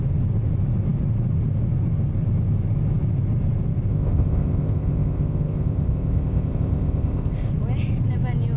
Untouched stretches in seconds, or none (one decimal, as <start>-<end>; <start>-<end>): 0.0-3.9; 7.5-8.6